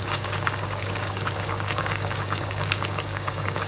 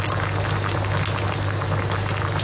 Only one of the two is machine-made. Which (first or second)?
first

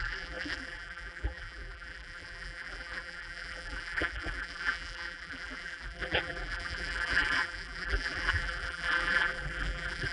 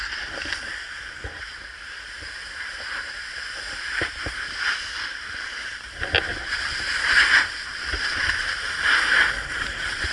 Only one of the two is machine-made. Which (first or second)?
first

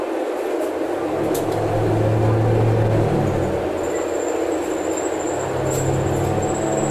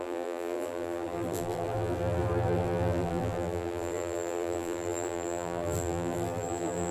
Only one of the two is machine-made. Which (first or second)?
second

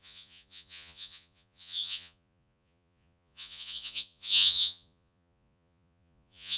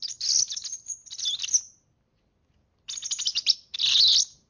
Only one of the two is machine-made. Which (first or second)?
first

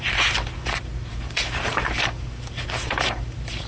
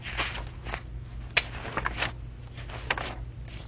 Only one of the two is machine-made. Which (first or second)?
first